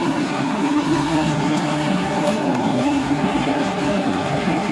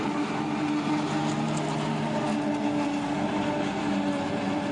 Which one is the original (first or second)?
second